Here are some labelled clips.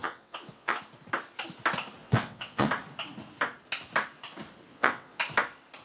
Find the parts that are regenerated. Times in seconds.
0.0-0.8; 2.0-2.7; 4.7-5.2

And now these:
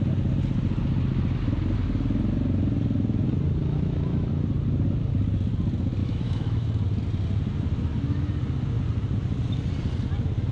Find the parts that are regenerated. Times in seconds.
3.6-4.3; 6.0-6.7

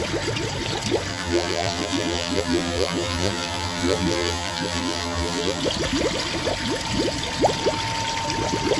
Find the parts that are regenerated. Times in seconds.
1.1-5.6

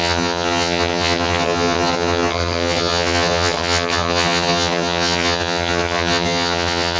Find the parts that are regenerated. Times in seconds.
0.0-7.0

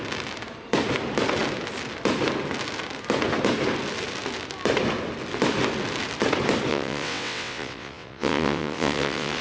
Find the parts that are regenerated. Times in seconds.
6.7-9.4

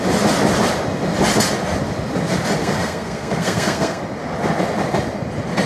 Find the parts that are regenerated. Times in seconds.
2.6-4.0